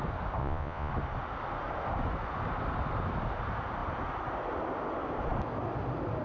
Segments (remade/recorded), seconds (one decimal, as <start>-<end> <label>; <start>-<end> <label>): 0.0-0.4 recorded; 0.4-0.9 remade; 0.9-6.2 recorded

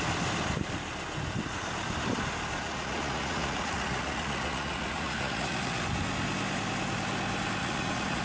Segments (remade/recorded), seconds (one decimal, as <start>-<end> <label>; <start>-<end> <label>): 0.0-2.6 recorded; 2.6-5.8 remade; 5.8-7.6 recorded; 7.6-8.2 remade

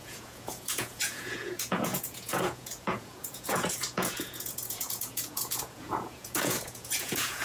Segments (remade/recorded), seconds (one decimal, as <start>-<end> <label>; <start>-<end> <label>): 0.0-7.4 remade

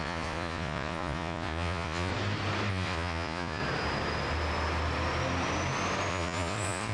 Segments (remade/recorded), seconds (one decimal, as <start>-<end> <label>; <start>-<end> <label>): 0.0-2.1 remade; 2.1-2.7 recorded; 2.7-3.6 remade; 3.6-6.1 recorded; 6.1-6.9 remade

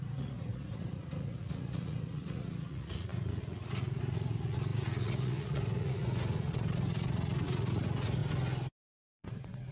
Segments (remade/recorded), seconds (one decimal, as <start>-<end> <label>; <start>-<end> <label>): 0.0-8.2 remade; 8.2-8.8 recorded; 8.8-9.7 remade

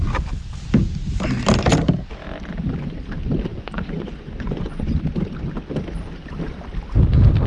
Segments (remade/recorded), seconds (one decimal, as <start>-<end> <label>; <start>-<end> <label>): 0.0-3.5 recorded; 3.5-4.9 remade; 4.9-7.5 recorded

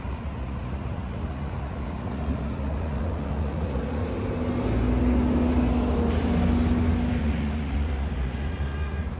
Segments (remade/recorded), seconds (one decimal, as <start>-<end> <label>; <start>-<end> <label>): 0.0-4.0 remade; 4.0-7.2 recorded; 7.2-9.2 remade

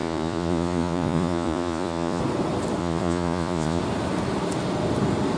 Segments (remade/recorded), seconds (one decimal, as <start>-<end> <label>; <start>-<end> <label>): 0.0-2.2 remade; 2.2-2.8 recorded; 2.8-3.8 remade; 3.8-5.4 recorded